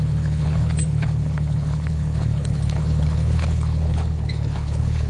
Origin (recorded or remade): remade